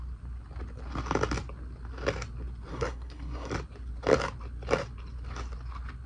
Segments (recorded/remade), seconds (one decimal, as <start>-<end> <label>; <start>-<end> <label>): 0.0-2.7 recorded; 2.7-3.5 remade; 3.5-6.1 recorded